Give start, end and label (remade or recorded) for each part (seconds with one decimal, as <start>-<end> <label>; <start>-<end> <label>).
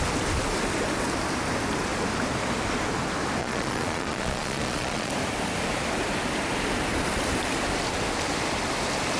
0.0-3.4 recorded; 3.4-5.1 remade; 5.1-9.2 recorded